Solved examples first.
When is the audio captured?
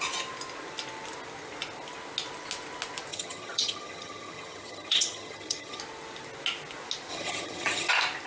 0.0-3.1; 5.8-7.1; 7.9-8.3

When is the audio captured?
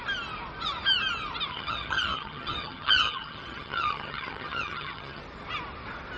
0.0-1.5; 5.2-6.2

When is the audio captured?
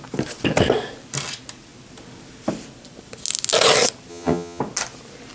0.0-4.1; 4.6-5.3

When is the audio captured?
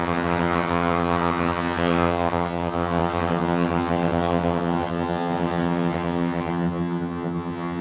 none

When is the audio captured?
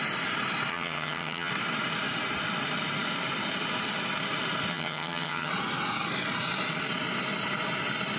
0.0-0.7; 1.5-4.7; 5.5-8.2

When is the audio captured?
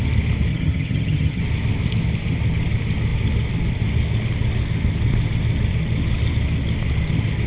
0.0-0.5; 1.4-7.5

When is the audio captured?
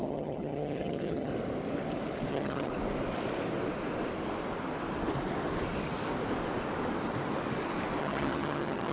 1.3-2.3; 2.7-8.0